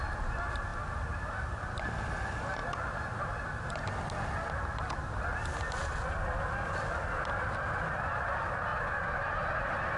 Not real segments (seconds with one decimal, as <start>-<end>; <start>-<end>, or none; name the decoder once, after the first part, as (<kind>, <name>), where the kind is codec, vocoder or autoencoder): none